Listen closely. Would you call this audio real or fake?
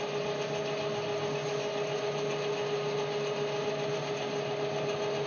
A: real